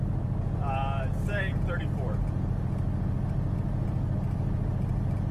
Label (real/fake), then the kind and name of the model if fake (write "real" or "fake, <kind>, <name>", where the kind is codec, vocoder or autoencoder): real